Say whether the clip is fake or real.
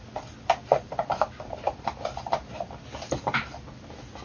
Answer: real